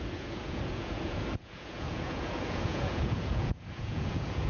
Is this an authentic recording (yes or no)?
no